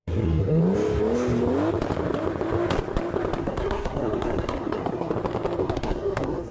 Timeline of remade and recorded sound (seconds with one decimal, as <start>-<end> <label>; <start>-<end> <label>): 0.0-0.6 remade; 0.6-3.4 recorded; 3.4-5.1 remade; 5.1-5.6 recorded; 5.6-6.5 remade